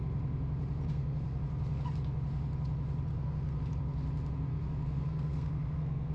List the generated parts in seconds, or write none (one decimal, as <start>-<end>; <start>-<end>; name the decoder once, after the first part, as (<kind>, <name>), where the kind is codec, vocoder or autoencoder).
0.9-1.4 (codec, SNAC); 3.1-3.6; 4.5-6.1